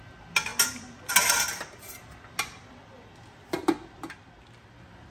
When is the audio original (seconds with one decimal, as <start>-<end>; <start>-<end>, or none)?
0.0-5.1